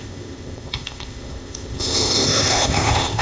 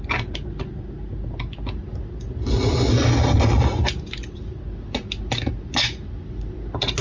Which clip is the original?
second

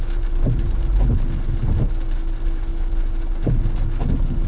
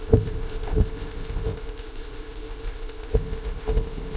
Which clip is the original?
first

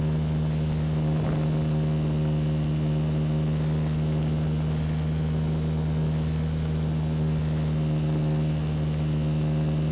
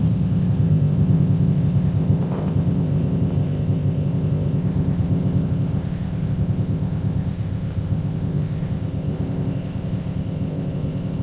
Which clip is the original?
first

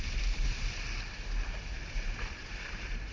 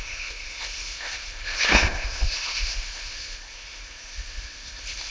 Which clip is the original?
first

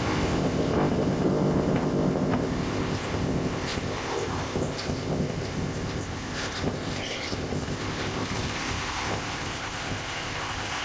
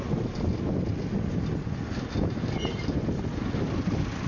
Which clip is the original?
second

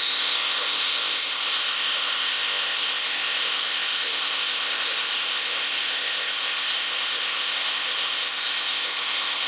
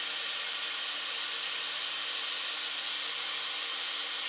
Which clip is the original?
second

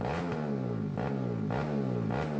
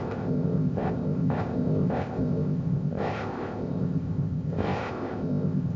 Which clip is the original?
first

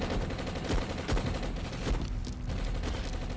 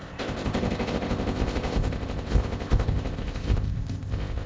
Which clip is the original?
first